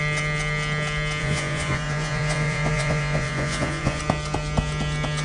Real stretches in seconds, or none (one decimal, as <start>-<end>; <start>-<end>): 0.0-1.2; 4.0-5.2